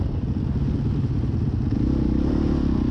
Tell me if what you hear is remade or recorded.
recorded